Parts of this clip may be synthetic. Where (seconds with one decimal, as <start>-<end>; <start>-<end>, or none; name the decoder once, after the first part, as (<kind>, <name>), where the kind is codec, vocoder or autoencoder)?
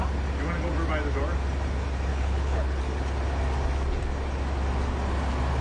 2.1-2.8 (codec, HILCodec)